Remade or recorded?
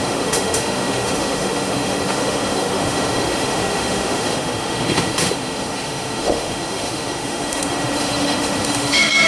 remade